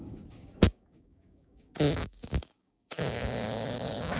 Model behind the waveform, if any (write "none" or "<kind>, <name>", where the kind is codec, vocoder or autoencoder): codec, DAC